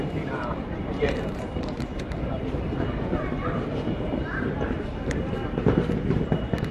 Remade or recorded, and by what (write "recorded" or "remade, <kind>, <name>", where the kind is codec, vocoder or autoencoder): remade, vocoder, BigVGAN v2